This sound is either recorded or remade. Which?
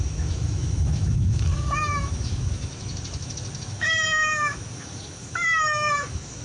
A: remade